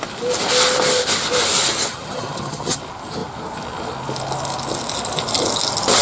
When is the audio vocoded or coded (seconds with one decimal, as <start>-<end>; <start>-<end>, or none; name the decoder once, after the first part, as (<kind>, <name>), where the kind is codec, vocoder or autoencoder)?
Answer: 1.9-2.8 (vocoder, HiFi-GAN)